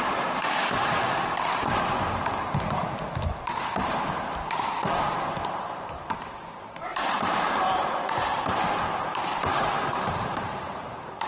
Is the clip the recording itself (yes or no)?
no